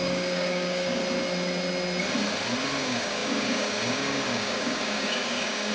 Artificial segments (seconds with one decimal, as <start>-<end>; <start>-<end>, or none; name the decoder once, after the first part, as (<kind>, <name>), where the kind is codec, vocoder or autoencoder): 0.0-1.0 (codec, DAC); 2.8-5.7